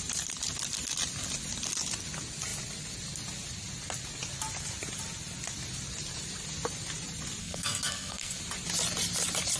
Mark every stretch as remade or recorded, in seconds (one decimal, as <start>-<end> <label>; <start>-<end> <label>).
0.0-7.4 recorded; 7.4-8.4 remade; 8.4-9.6 recorded